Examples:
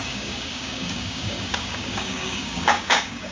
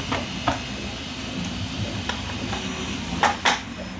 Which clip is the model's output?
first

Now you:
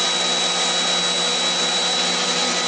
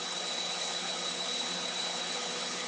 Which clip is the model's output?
second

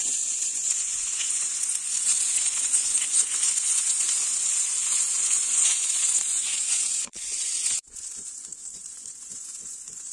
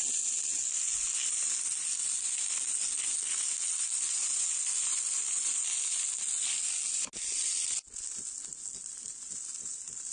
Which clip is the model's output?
first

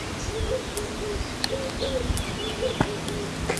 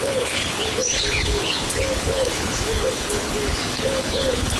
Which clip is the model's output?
second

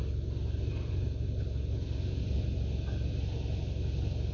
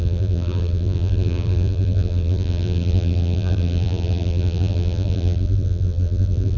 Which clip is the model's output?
second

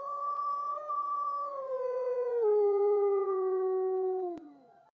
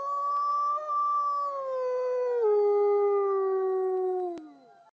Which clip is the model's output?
first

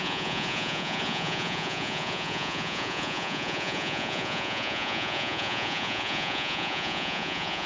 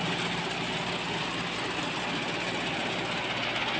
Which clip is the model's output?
first